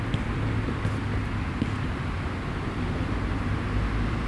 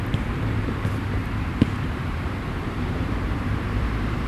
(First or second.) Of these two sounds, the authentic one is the first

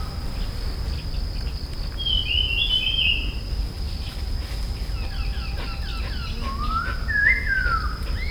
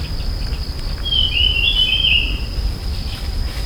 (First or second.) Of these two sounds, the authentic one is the first